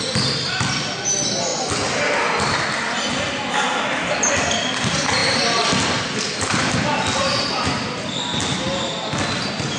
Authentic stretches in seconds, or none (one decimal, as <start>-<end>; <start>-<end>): 0.0-9.8